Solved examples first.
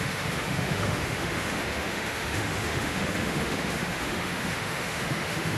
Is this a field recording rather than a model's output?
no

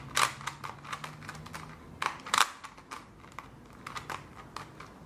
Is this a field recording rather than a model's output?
yes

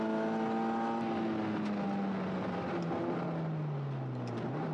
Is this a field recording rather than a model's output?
yes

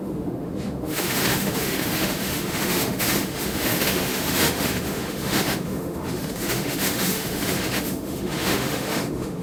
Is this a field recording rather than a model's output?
no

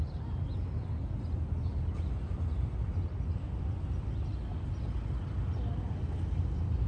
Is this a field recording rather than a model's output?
yes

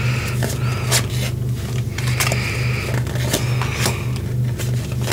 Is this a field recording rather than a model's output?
yes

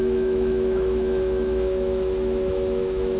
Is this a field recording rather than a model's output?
no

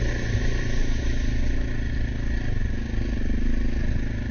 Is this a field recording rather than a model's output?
yes